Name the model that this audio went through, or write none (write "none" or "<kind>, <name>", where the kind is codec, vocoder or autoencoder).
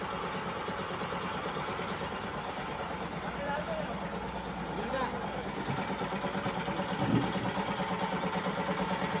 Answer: none